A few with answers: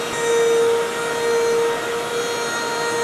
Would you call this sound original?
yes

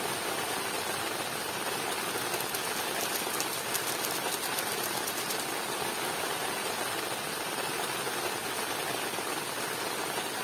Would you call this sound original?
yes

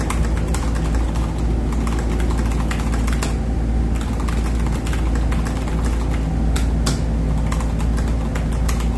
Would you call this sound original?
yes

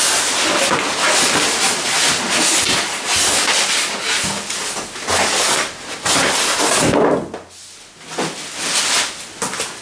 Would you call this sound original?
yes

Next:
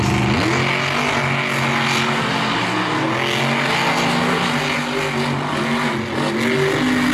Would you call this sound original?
yes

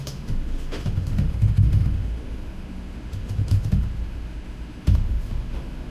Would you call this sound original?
no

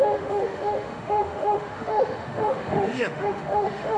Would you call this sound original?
no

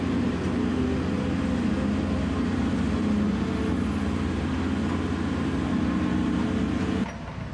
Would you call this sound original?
yes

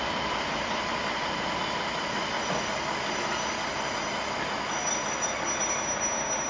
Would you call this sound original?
yes